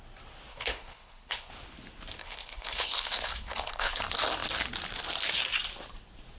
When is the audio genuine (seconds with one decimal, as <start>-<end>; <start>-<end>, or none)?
0.0-0.5; 1.5-2.2; 4.0-6.4